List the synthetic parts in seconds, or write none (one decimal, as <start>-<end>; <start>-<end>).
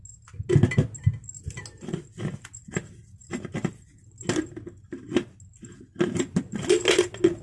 none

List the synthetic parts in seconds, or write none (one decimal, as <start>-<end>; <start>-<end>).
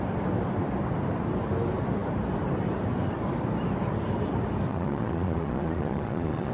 4.7-6.5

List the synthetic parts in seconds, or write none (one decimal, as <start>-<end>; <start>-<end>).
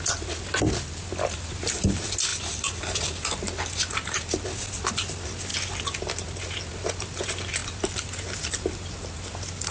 none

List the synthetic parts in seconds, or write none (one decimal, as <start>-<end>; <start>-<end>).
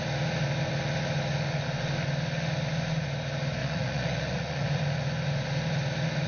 3.6-4.8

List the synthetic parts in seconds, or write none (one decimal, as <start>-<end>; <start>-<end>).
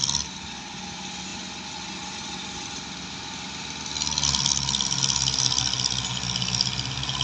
none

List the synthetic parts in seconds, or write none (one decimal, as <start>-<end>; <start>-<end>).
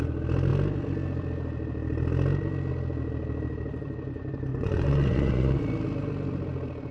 4.5-5.6